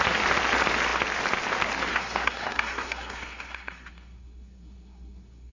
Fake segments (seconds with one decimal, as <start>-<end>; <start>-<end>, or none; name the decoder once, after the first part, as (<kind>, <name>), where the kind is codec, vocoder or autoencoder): 1.9-5.5 (codec, SNAC)